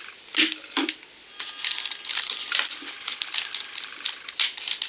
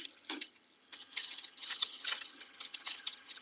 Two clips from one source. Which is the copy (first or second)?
second